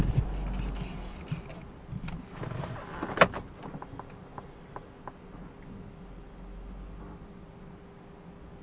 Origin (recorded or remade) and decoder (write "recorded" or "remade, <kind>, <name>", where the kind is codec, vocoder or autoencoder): recorded